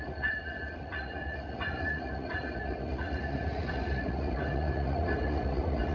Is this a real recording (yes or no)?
no